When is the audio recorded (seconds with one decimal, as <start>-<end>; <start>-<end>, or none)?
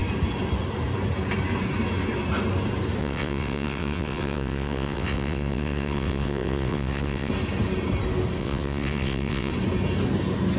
0.0-3.0; 7.3-8.4; 9.5-10.6